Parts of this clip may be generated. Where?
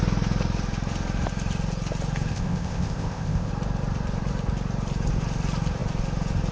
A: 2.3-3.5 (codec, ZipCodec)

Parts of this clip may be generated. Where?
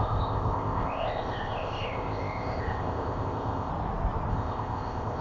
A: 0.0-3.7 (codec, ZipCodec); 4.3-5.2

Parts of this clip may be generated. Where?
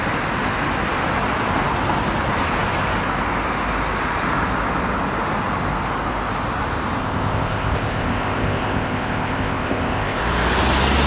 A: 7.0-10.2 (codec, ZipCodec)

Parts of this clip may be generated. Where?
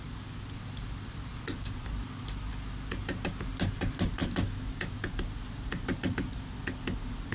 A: none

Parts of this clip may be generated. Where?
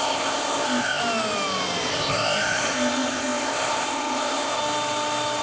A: 0.0-1.0 (codec, ZipCodec); 1.9-4.6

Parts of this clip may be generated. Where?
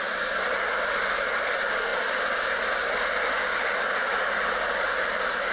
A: none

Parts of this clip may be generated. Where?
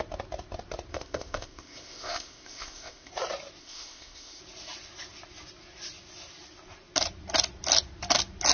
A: 0.9-3.1 (codec, ZipCodec); 3.6-4.4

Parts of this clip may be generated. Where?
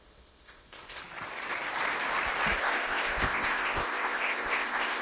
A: 0.0-1.0 (codec, ZipCodec); 2.6-5.0